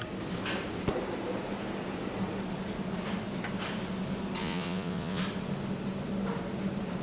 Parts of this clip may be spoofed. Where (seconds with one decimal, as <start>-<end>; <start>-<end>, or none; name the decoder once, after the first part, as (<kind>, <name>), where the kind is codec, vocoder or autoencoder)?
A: 4.4-5.2 (vocoder, Vocos)